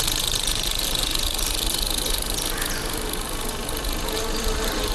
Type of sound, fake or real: real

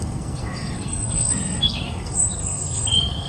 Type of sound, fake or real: fake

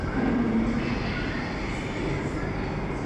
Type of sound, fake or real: real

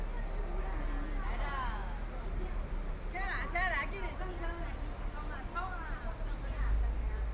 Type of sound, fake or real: real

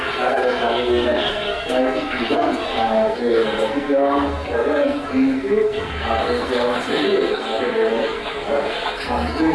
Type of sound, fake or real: fake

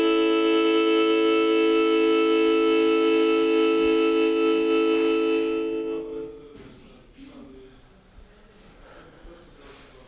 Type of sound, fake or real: real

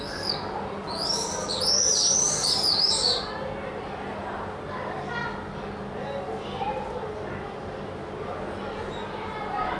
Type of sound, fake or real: real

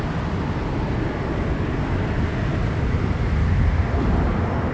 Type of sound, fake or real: real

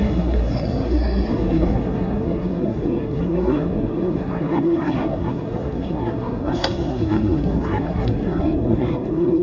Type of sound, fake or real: fake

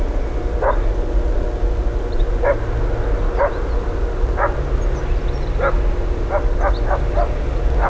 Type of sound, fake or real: real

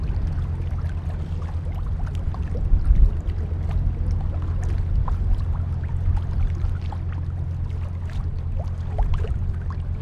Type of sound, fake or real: real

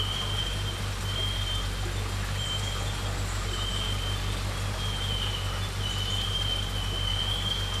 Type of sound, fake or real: real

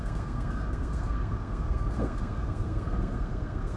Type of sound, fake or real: fake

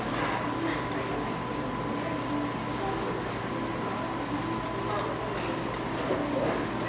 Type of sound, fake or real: real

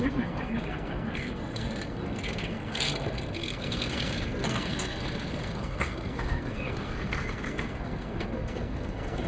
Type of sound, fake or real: fake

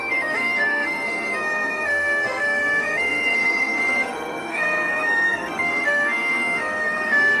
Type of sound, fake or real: fake